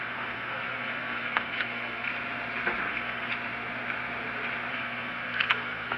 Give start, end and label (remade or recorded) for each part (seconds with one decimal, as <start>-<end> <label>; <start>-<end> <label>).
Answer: 0.0-2.1 remade; 2.1-2.9 recorded; 2.9-3.3 remade; 3.3-4.7 recorded; 4.7-6.0 remade